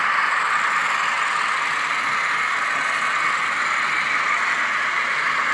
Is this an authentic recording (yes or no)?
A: yes